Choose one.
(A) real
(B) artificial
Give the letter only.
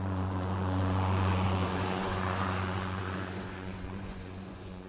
B